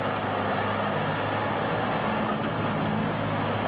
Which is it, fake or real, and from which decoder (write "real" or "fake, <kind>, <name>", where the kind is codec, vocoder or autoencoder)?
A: real